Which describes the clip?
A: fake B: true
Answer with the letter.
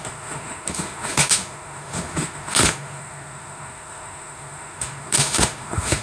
A